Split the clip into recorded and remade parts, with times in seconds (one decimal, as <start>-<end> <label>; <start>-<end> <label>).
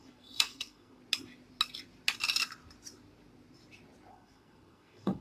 0.0-1.0 remade; 1.0-4.1 recorded; 4.1-5.2 remade